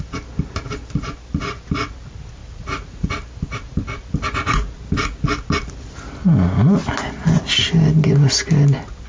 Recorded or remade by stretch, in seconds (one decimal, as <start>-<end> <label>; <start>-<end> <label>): 0.0-2.4 recorded; 2.4-3.1 remade; 3.1-9.1 recorded

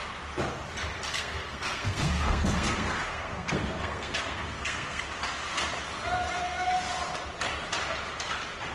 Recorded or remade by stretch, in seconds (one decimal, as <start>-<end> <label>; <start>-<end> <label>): 0.0-1.1 recorded; 1.1-5.0 remade; 5.0-8.7 recorded